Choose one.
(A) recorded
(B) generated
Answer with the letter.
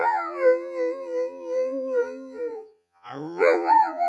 B